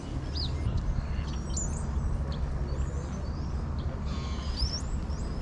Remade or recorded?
recorded